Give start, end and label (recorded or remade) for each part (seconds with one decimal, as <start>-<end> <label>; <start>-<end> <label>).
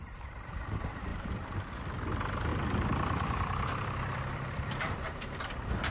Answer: 0.0-1.1 recorded; 1.1-1.7 remade; 1.7-2.5 recorded; 2.5-5.4 remade; 5.4-5.9 recorded